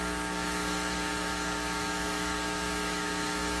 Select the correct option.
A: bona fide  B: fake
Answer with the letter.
B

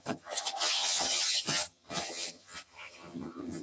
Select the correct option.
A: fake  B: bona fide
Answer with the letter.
A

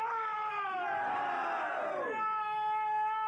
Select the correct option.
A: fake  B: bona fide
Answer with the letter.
B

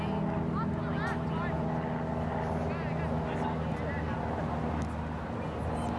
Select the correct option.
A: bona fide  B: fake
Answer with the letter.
A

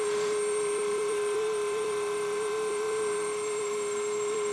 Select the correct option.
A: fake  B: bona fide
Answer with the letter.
A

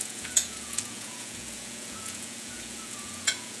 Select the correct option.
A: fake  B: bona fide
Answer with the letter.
A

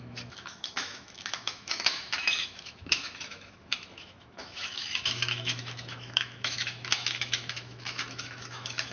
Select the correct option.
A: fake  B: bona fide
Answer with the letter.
A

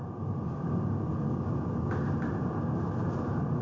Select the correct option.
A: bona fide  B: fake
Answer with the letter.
A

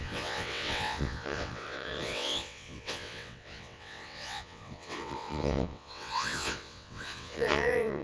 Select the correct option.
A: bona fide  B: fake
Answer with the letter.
B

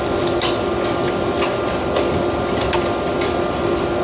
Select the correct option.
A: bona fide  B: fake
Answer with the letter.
A